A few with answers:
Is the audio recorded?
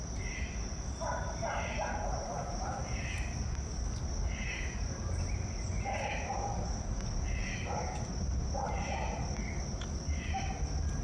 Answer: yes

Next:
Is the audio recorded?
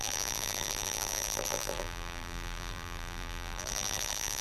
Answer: no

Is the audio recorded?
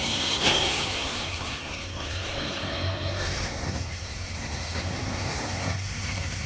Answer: no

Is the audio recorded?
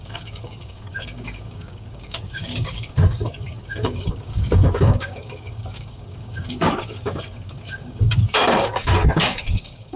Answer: no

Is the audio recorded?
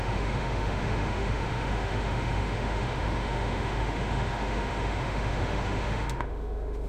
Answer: no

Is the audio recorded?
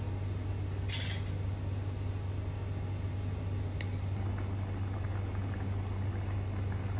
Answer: yes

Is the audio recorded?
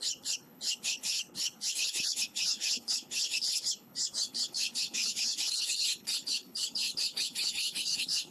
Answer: no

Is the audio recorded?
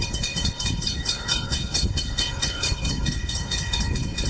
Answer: no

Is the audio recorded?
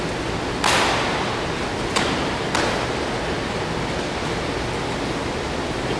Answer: yes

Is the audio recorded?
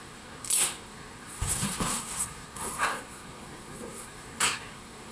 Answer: no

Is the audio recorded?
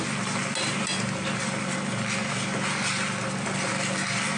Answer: yes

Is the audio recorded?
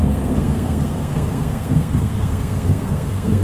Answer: no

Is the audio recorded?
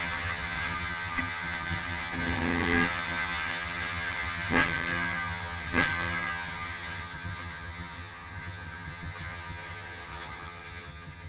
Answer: no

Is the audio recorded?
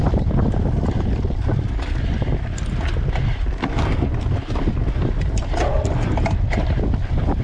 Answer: yes